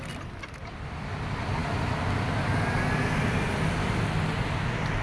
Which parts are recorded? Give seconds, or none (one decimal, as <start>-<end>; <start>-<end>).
0.0-5.0